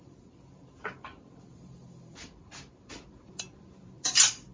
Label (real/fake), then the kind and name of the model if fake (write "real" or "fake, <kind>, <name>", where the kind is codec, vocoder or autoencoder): fake, vocoder, BigVGAN v2